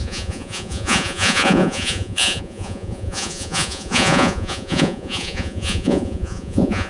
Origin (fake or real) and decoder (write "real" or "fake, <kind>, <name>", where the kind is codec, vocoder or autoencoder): fake, vocoder, Vocos